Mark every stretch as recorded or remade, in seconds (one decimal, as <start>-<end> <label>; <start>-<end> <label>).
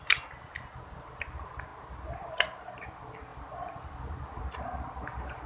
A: 0.0-5.5 recorded